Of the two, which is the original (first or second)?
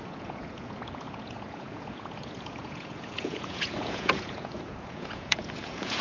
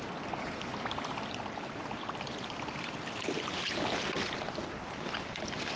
second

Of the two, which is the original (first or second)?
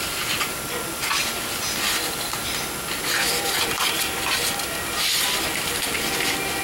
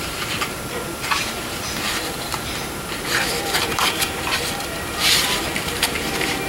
first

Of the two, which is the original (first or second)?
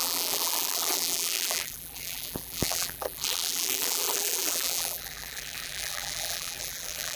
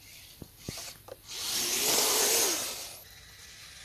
second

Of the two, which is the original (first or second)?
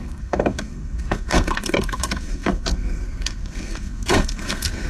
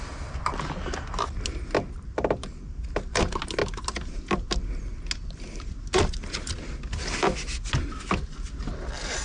second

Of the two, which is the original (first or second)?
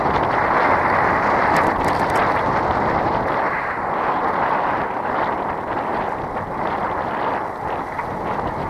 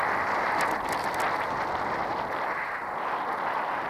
second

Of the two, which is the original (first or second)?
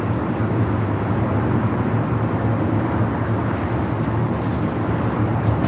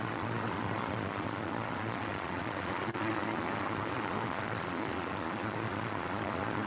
first